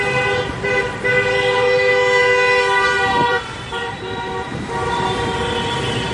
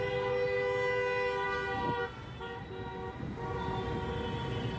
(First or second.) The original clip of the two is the second